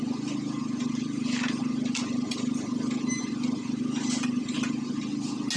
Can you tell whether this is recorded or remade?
recorded